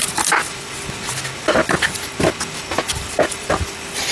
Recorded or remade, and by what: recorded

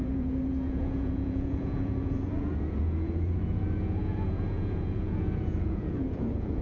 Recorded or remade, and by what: remade, vocoder, Vocos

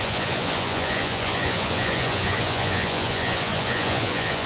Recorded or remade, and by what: remade, vocoder, Vocos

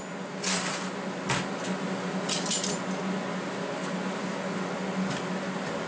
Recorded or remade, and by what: recorded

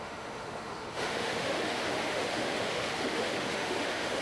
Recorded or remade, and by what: remade, autoencoder, DAC-VAE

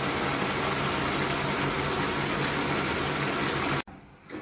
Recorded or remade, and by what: recorded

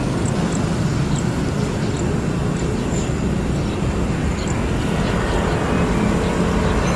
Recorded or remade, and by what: recorded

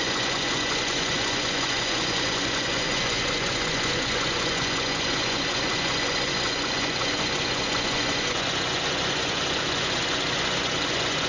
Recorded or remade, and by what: remade, vocoder, Vocos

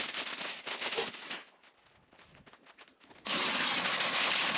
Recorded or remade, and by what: recorded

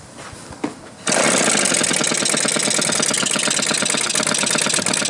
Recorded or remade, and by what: recorded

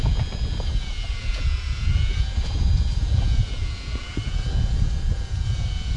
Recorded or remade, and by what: remade, vocoder, Vocos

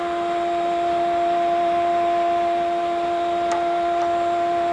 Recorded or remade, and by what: remade, vocoder, BigVGAN v2